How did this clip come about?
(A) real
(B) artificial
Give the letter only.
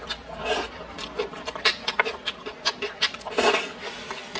A